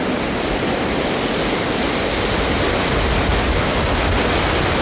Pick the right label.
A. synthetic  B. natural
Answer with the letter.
B